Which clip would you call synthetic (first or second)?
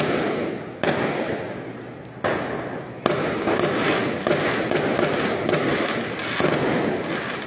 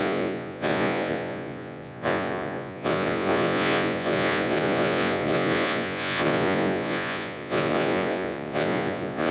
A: second